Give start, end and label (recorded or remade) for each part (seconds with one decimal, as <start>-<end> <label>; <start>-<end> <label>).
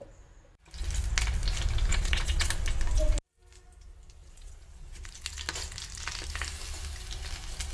0.0-1.9 recorded; 1.9-2.5 remade; 2.5-4.2 recorded; 4.2-5.1 remade; 5.1-7.7 recorded